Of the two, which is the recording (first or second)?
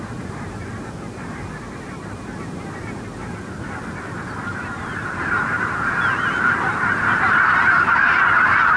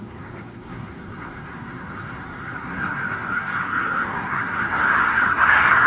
first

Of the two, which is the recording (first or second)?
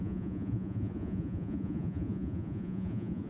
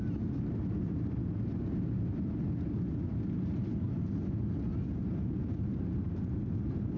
second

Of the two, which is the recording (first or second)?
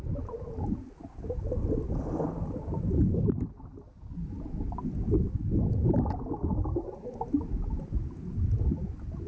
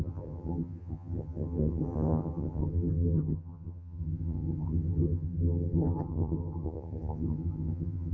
first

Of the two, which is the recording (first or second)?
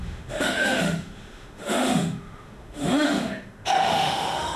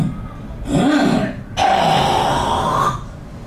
second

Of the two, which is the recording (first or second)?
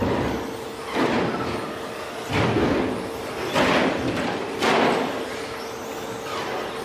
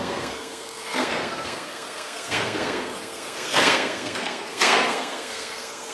first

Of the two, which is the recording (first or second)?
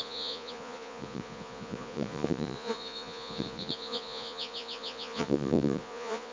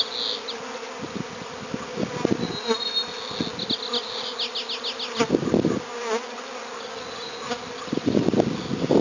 second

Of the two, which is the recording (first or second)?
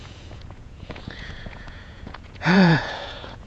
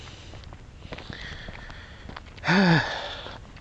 second